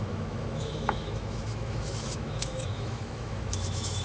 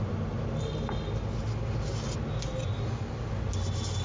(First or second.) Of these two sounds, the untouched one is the second